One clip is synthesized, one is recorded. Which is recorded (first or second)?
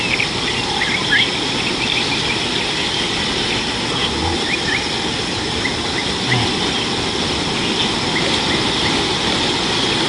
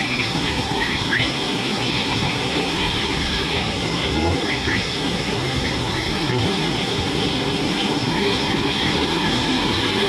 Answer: first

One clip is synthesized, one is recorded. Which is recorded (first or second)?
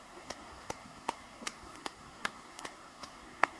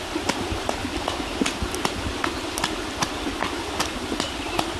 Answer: second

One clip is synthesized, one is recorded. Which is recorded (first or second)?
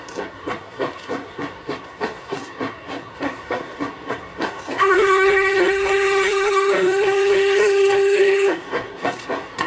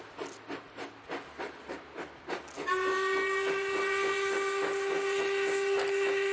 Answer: second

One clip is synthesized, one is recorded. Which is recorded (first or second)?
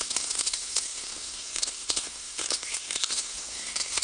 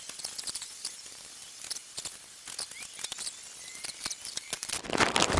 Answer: second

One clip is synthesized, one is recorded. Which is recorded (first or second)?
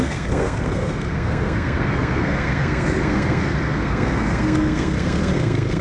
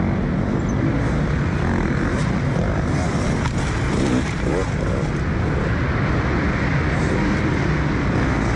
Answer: second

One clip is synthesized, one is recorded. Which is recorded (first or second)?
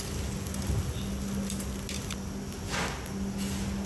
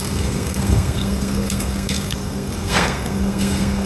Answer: first